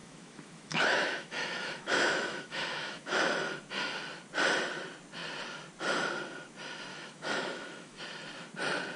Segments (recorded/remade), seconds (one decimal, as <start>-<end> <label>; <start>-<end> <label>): 0.0-3.2 remade; 3.2-6.9 recorded; 6.9-8.0 remade; 8.0-9.0 recorded

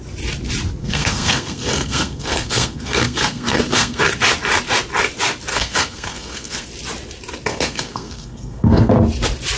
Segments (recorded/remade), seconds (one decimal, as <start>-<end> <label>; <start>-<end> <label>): 0.0-0.8 recorded; 0.8-4.0 remade; 4.0-5.5 recorded; 5.5-6.7 remade; 6.7-7.5 recorded; 7.5-8.9 remade; 8.9-9.6 recorded

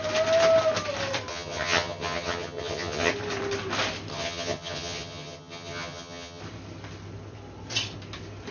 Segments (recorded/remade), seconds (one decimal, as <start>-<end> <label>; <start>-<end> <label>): 0.0-1.3 recorded; 1.3-3.1 remade; 3.1-4.1 recorded; 4.1-6.4 remade; 6.4-8.5 recorded